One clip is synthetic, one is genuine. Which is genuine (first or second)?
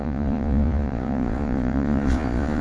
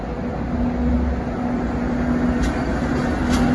second